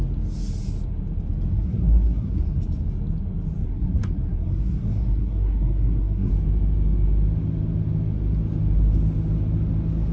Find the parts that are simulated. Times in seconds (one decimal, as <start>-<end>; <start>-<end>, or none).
1.5-2.6; 3.6-6.3